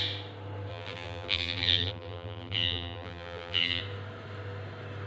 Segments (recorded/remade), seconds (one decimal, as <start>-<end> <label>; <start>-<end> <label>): 0.0-0.7 recorded; 0.7-3.8 remade; 3.8-5.1 recorded